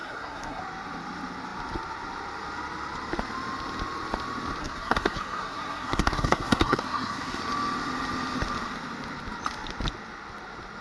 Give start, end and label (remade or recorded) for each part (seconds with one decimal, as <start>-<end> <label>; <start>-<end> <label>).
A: 0.0-0.6 remade; 0.6-4.6 recorded; 4.6-7.4 remade; 7.4-10.8 recorded